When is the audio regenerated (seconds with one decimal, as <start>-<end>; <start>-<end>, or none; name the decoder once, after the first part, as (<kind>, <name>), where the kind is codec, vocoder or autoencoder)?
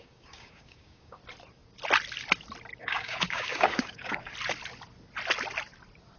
0.0-1.2 (codec, DAC); 2.8-4.3